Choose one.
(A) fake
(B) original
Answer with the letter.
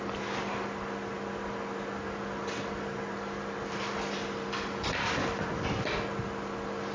B